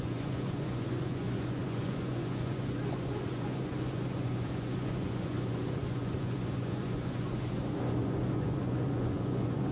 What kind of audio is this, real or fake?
fake